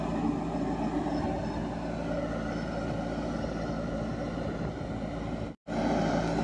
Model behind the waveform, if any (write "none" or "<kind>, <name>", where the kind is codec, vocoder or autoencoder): none